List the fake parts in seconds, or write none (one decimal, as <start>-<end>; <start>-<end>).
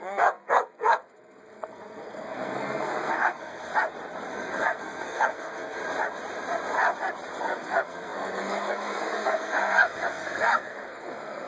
0.0-3.7; 4.3-5.8; 7.4-11.5